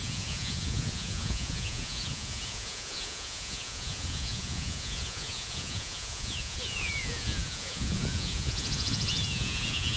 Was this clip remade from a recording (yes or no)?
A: yes